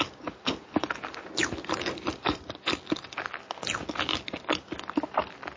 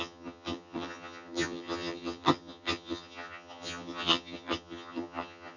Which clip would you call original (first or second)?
first